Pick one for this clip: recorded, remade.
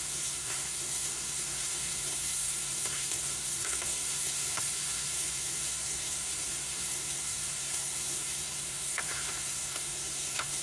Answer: remade